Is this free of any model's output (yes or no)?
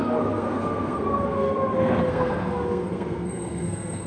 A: no